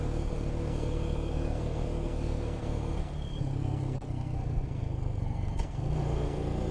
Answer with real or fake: fake